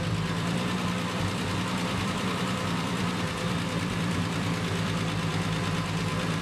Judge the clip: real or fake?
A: fake